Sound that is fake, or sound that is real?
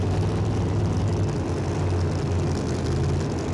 real